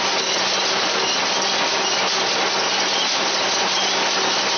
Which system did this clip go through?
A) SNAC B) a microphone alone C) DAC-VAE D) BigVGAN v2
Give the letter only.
B